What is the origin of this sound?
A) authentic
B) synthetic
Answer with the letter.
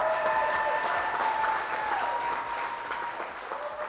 A